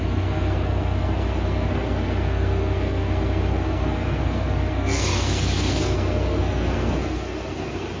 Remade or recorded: remade